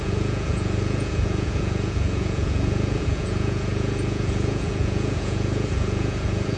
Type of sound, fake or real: fake